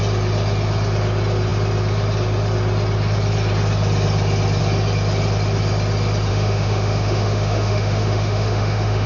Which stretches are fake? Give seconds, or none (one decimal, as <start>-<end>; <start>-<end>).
6.3-9.1